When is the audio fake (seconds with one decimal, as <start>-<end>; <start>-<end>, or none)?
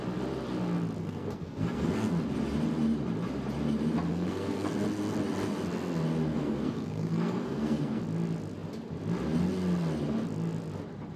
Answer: 1.0-2.1; 4.1-4.7; 6.3-8.0